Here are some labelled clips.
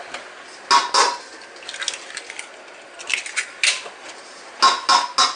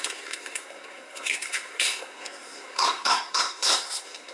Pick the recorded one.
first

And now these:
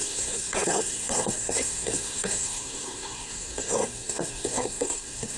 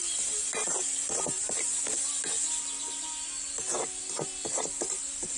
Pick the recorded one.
second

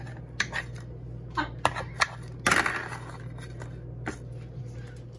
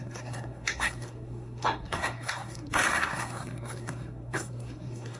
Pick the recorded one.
first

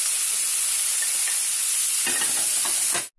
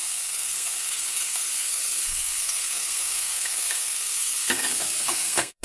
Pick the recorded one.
first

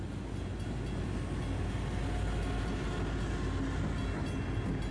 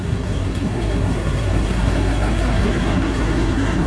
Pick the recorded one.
first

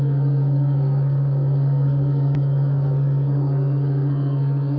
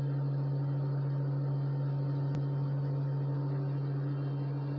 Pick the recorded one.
second